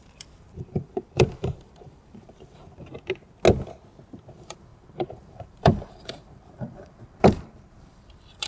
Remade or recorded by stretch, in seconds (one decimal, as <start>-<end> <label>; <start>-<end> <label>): 0.0-2.9 remade; 2.9-4.3 recorded; 4.3-8.5 remade